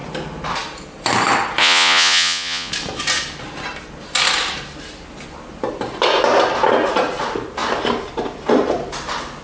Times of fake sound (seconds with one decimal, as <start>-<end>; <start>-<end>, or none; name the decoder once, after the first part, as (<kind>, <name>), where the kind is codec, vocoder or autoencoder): 1.6-2.7 (vocoder, Vocos)